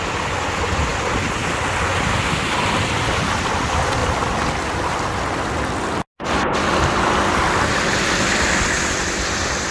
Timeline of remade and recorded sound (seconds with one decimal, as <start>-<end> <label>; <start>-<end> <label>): 0.0-9.7 recorded